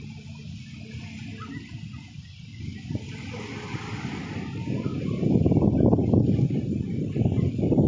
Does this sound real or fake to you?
real